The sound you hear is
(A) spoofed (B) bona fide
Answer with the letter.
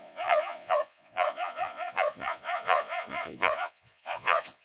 A